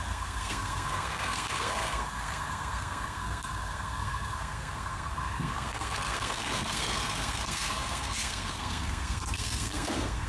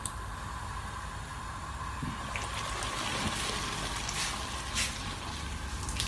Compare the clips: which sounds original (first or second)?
second